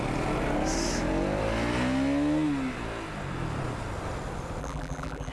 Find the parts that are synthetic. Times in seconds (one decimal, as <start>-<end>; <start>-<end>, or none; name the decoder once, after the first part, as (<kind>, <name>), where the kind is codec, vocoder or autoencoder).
4.6-5.3 (vocoder, BigVGAN v2)